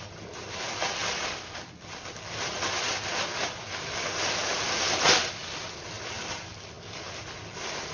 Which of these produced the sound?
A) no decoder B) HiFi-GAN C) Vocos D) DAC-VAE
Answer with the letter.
A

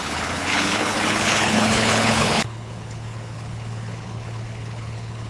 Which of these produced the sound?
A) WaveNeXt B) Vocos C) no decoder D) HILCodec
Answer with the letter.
D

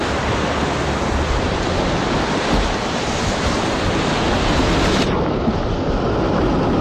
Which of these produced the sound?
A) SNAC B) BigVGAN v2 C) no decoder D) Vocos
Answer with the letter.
C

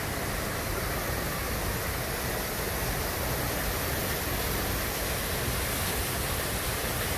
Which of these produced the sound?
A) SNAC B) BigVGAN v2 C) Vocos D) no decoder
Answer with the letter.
D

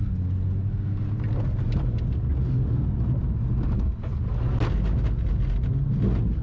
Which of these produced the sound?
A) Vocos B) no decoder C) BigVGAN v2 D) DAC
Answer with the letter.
B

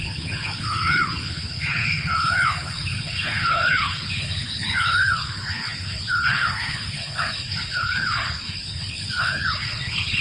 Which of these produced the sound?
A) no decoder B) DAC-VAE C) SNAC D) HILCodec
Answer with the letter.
D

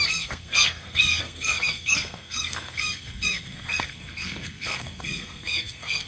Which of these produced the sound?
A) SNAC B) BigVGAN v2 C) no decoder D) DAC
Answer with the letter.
A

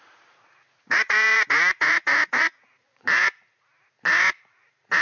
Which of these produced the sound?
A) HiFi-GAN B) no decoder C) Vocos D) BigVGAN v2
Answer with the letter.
C